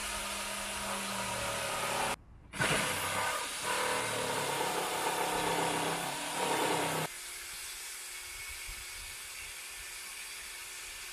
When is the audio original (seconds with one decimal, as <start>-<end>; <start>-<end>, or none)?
0.0-11.1